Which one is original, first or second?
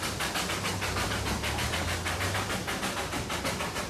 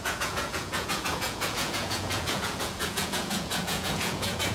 first